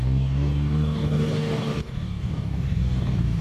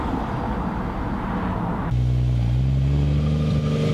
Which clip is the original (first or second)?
second